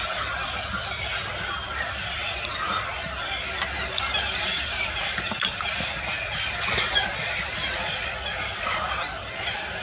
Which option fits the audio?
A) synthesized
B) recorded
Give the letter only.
B